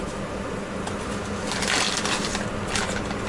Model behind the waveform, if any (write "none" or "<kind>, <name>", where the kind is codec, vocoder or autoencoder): none